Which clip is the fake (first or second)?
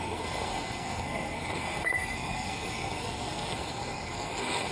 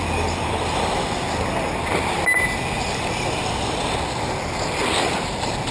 first